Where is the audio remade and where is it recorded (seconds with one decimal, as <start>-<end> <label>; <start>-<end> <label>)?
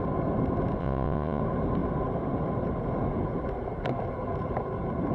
0.0-0.8 recorded; 0.8-1.4 remade; 1.4-5.1 recorded